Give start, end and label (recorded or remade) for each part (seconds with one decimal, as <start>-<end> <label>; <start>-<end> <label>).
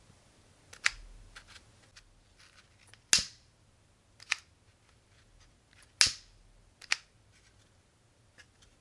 0.0-8.8 recorded